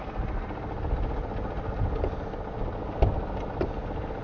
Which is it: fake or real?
real